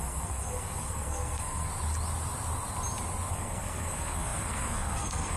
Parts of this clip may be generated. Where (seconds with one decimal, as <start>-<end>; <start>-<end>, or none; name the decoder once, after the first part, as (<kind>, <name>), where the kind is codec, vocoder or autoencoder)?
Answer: 0.0-1.7 (codec, SNAC); 3.3-5.4